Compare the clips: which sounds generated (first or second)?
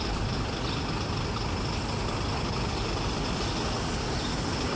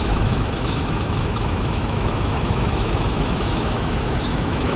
second